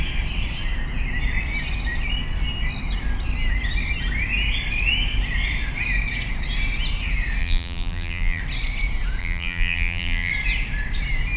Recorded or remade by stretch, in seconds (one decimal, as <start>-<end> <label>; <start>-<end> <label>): 0.0-7.4 recorded; 7.4-8.4 remade; 8.4-9.2 recorded; 9.2-10.3 remade; 10.3-11.4 recorded